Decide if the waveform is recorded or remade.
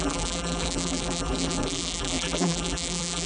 remade